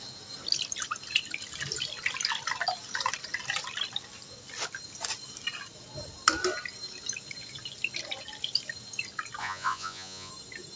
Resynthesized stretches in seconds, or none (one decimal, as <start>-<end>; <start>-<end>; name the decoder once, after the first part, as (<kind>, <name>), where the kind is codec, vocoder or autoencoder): 9.4-10.3 (vocoder, Vocos)